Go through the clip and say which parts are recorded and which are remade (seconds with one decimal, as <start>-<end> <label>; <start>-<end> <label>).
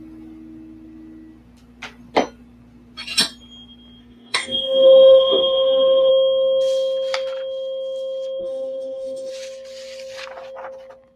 0.0-4.0 recorded; 4.0-6.1 remade; 6.1-8.4 recorded; 8.4-9.3 remade; 9.3-11.2 recorded